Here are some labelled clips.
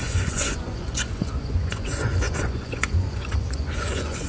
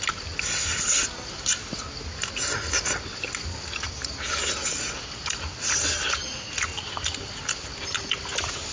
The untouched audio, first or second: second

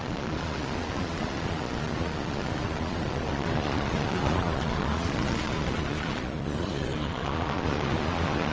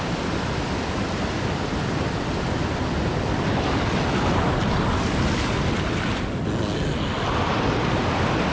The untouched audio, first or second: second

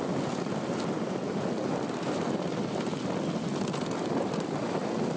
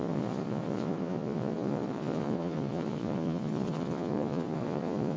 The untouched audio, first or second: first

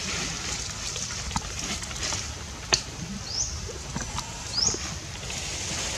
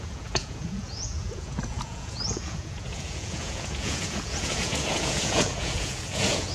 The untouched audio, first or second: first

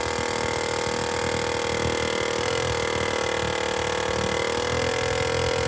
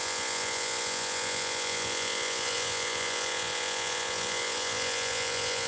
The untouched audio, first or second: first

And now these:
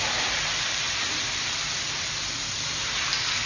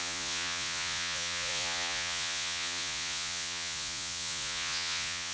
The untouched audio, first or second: first